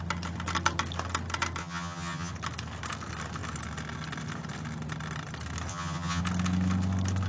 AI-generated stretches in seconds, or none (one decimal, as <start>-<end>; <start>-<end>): 1.6-2.3; 5.7-6.2